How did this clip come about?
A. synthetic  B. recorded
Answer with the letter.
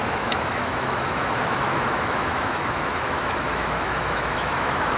A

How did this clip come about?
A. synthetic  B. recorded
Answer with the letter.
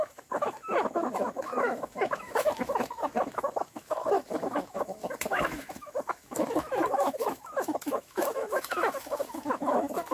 A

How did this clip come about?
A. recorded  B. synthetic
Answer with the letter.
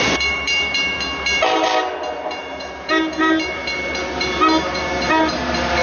B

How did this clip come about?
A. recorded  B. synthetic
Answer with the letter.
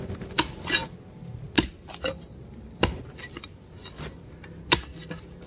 A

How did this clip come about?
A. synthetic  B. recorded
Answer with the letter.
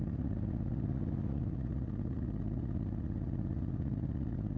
A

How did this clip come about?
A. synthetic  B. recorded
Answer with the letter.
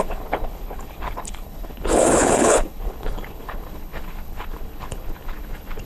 A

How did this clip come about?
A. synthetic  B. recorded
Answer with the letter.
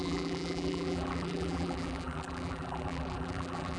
A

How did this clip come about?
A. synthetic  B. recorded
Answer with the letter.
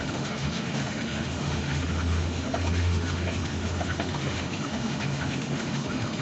A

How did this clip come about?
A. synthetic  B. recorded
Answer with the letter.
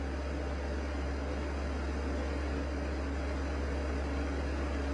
B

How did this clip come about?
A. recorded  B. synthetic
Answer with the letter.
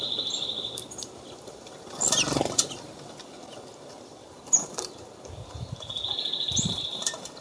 B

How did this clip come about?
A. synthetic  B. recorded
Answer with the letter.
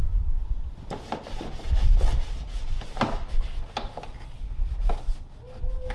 B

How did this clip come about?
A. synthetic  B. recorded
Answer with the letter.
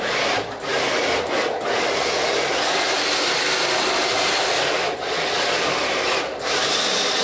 B